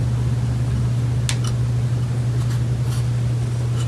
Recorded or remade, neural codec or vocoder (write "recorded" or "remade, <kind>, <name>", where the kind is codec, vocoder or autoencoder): recorded